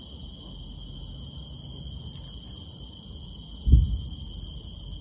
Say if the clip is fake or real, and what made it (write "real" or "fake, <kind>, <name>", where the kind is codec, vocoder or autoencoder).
real